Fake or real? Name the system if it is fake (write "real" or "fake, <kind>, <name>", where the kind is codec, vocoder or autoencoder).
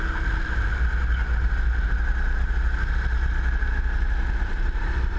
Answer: real